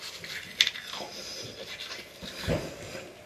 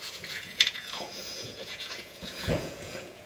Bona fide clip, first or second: first